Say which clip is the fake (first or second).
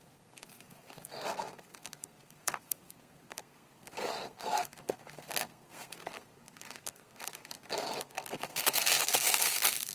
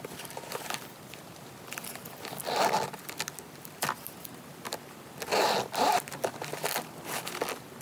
first